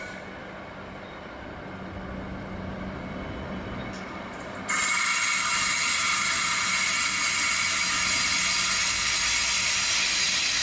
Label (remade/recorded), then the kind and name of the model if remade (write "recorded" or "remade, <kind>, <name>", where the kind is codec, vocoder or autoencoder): recorded